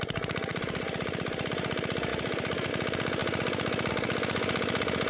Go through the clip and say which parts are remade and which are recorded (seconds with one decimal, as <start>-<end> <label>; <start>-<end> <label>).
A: 0.0-0.5 recorded; 0.5-1.5 remade; 1.5-2.1 recorded; 2.1-2.7 remade; 2.7-5.1 recorded